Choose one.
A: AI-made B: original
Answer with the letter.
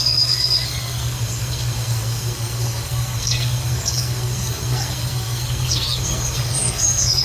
A